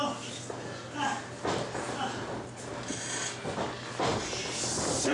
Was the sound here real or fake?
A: real